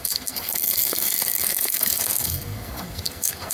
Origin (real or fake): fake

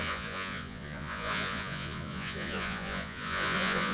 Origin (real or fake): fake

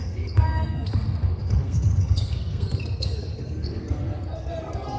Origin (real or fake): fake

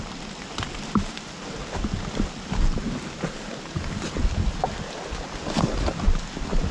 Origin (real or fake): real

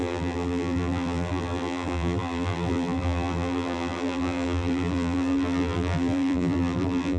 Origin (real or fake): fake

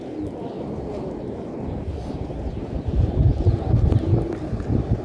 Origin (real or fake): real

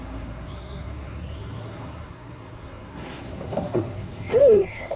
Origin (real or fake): fake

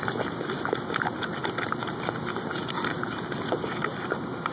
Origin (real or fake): real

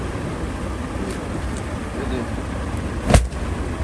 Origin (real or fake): real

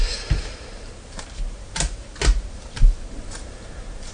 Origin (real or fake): fake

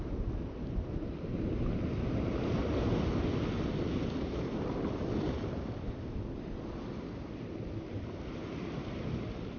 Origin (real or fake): real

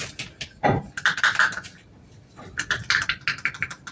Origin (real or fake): real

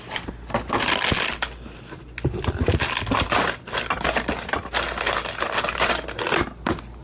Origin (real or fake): real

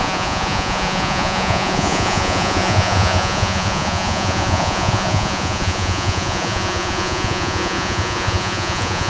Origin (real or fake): fake